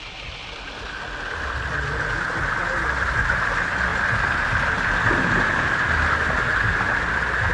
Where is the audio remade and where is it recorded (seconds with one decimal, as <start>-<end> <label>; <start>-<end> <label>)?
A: 0.0-7.5 recorded